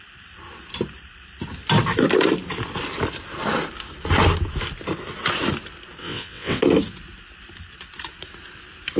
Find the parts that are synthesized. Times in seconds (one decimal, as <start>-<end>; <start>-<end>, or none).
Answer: 6.0-6.6